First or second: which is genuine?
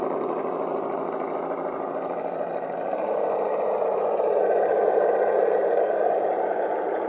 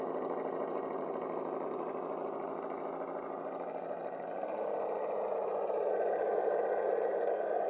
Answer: second